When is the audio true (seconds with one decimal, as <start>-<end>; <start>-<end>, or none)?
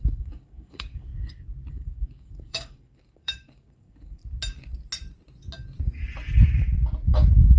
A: 1.1-1.7; 4.2-7.1